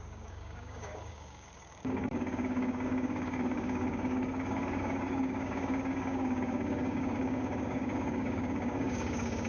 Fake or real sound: fake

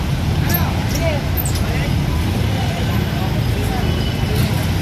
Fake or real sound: real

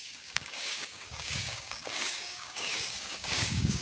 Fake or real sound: fake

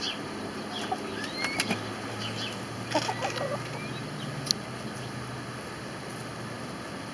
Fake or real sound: real